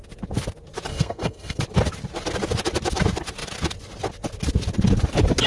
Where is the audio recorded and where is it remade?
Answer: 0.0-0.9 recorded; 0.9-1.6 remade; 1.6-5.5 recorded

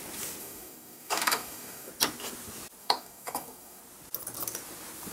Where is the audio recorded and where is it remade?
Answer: 0.0-0.4 recorded; 0.4-1.9 remade; 1.9-2.8 recorded; 2.8-3.8 remade; 3.8-5.1 recorded

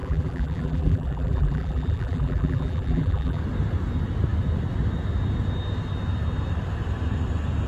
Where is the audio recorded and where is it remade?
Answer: 0.0-3.4 remade; 3.4-7.7 recorded

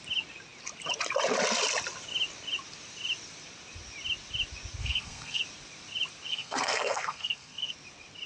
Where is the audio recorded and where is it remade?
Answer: 0.0-4.8 recorded; 4.8-5.4 remade; 5.4-6.3 recorded; 6.3-7.7 remade; 7.7-8.3 recorded